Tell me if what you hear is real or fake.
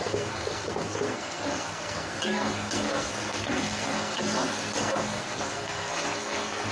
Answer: fake